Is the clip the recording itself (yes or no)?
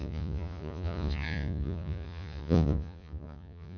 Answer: no